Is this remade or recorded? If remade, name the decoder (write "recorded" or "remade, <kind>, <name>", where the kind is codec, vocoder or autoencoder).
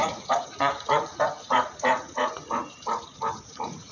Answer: remade, vocoder, Vocos